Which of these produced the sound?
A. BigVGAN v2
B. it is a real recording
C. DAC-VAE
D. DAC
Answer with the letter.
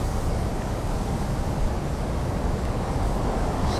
D